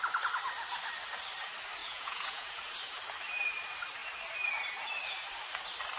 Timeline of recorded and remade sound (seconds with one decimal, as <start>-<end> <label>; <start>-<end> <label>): 0.0-1.8 recorded; 1.8-2.6 remade; 2.6-6.0 recorded